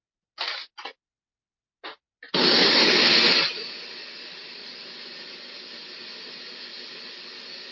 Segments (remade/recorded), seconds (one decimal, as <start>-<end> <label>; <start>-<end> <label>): 0.0-7.7 recorded